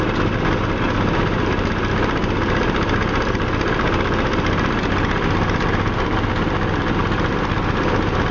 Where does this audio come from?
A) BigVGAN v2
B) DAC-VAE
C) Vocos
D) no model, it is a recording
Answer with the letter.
D